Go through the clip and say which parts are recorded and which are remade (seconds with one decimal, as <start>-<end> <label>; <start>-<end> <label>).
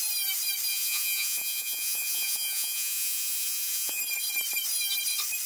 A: 0.0-0.7 recorded; 0.7-4.0 remade; 4.0-5.5 recorded